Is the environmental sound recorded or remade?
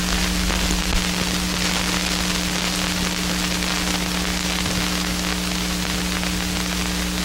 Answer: recorded